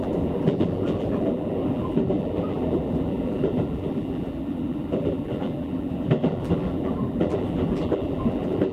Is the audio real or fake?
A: fake